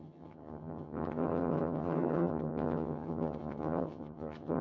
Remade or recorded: remade